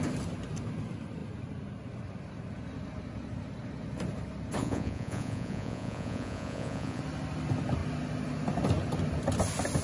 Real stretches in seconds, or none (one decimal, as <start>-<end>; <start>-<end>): 0.0-4.6; 7.0-9.8